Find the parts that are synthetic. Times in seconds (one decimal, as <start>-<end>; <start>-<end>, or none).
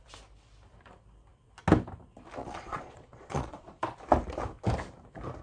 2.4-3.8